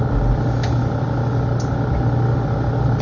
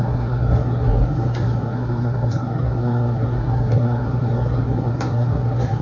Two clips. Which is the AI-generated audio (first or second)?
second